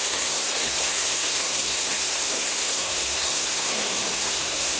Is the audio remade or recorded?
remade